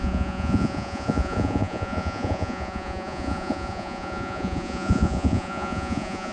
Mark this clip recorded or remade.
remade